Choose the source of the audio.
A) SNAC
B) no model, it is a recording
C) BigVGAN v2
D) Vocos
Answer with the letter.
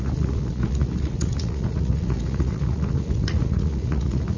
D